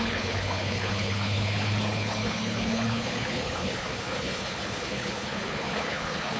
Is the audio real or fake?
fake